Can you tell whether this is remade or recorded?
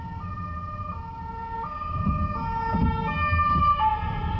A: recorded